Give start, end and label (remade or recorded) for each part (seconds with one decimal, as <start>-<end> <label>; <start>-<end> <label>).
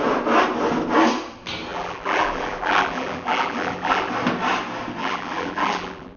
0.0-1.7 recorded; 1.7-4.1 remade; 4.1-5.0 recorded; 5.0-6.2 remade